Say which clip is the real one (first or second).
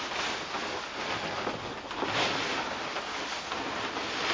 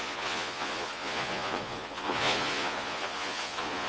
first